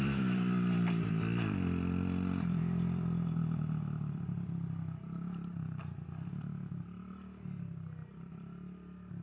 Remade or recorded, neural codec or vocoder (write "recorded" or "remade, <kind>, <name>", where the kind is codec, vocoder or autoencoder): remade, vocoder, BigVGAN v2